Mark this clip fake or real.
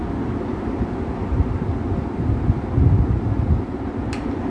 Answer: real